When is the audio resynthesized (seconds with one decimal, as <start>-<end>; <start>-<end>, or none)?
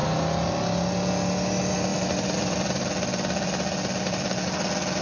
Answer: none